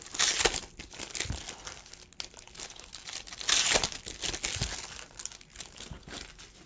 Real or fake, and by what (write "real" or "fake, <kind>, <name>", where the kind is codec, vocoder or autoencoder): real